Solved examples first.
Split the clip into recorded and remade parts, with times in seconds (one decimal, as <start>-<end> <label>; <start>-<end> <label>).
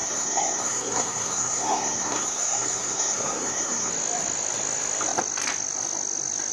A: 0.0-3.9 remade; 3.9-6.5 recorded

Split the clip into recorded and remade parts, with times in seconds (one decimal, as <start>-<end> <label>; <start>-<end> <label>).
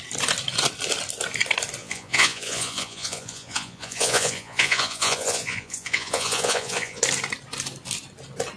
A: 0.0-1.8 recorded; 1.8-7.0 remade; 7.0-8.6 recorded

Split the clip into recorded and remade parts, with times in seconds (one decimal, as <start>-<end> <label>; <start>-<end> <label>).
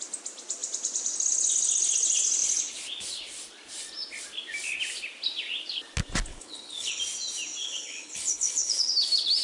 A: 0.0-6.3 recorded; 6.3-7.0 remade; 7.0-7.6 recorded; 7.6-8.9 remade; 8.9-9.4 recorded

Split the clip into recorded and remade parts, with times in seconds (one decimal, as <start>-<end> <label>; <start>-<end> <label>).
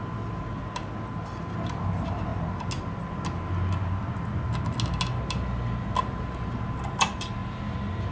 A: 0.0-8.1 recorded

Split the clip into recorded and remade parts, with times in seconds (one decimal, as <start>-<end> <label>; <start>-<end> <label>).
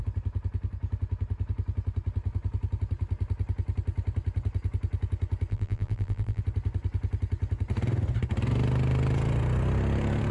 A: 0.0-5.5 recorded; 5.5-6.4 remade; 6.4-10.3 recorded